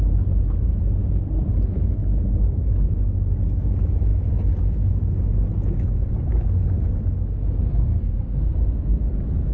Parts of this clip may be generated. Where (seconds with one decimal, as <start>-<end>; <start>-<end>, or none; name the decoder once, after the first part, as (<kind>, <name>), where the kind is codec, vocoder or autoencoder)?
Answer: 7.6-9.1 (codec, SNAC)